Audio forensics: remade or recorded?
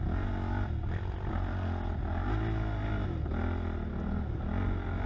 recorded